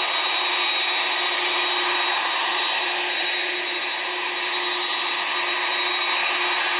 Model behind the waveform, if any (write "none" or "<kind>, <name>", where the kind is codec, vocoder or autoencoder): none